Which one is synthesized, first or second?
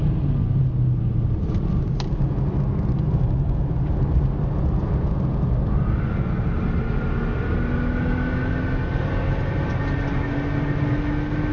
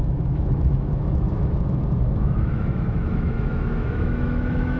second